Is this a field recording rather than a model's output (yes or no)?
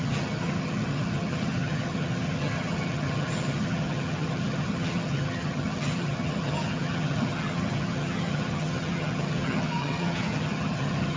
no